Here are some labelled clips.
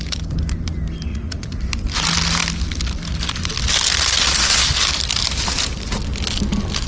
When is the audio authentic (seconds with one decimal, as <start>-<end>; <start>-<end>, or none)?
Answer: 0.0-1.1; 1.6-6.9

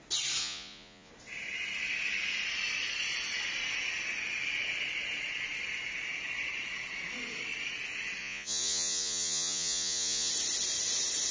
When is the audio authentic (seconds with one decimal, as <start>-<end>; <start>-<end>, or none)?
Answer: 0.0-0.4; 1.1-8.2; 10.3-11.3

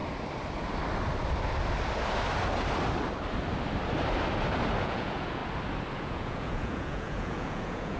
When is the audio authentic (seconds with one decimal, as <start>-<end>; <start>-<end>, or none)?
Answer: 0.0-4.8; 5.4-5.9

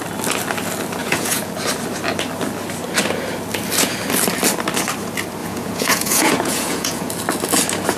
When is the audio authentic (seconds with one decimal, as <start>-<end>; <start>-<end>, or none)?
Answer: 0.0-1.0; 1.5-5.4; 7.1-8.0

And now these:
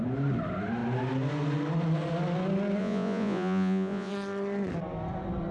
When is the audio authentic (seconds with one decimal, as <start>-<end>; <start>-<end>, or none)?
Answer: 0.0-2.8; 4.1-5.5